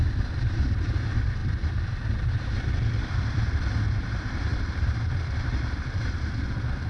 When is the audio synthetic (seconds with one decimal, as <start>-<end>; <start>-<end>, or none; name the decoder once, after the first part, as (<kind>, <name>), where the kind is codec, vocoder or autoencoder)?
0.0-6.9 (vocoder, BigVGAN v2)